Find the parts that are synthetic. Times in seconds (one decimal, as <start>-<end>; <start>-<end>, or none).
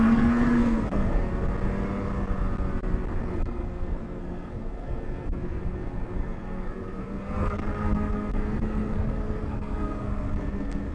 0.0-1.3; 3.2-10.9